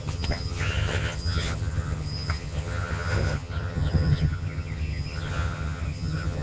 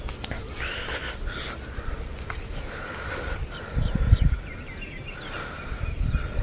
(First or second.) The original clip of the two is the second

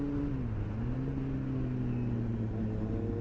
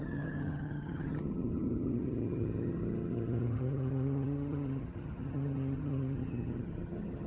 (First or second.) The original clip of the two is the first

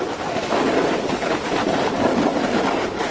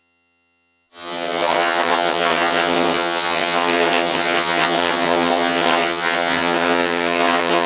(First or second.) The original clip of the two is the first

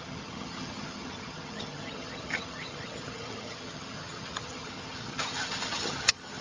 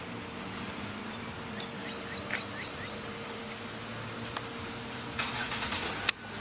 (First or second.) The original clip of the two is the second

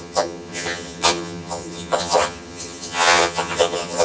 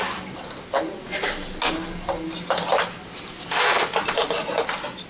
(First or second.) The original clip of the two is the second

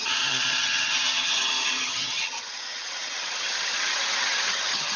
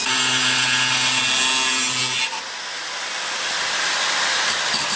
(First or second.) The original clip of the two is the second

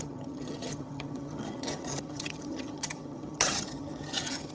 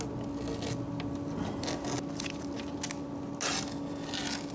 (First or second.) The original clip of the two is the second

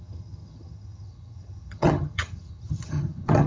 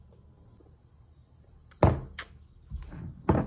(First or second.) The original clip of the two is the second